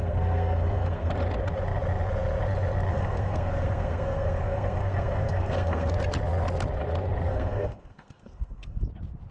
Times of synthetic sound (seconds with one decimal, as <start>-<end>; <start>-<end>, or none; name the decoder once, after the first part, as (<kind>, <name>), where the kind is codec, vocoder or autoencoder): 0.0-1.1 (codec, SNAC); 2.9-5.9; 7.3-8.8